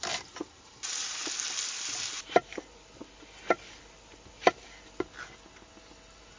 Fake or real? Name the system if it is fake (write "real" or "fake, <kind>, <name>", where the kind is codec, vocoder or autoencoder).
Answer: real